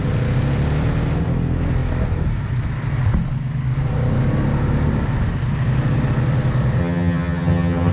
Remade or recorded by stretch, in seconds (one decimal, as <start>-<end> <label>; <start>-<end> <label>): 0.0-6.8 recorded; 6.8-7.9 remade